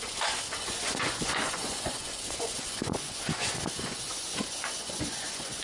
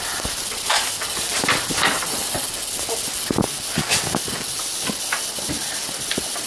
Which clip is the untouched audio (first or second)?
second